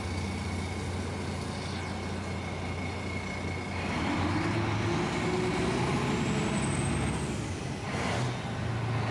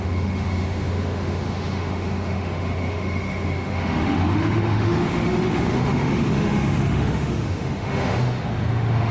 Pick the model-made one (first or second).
second